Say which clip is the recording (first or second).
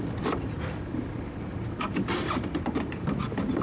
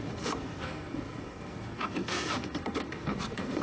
first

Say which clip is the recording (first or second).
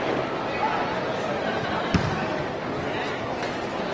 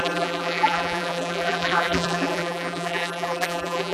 first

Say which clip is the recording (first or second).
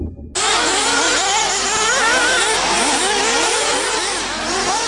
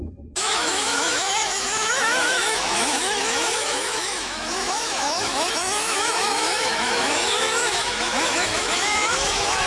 first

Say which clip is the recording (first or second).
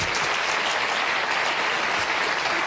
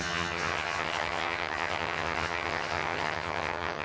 first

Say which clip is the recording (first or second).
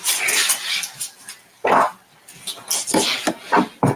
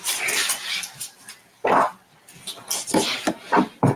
first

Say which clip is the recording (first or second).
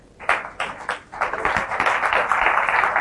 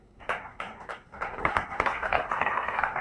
first